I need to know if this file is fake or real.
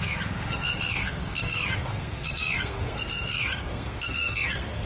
fake